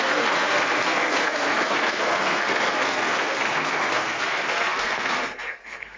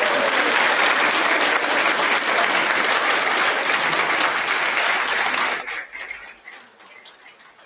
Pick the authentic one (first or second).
second